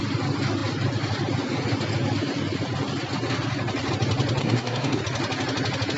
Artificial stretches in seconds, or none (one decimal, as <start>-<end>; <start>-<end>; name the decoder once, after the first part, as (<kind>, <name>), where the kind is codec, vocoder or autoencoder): 4.4-5.0 (codec, SNAC)